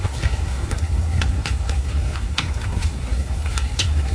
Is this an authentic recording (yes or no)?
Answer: no